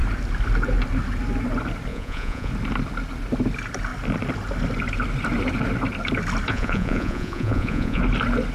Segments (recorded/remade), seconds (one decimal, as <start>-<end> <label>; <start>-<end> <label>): 0.0-1.9 recorded; 1.9-2.5 remade; 2.5-6.5 recorded; 6.5-8.0 remade; 8.0-8.5 recorded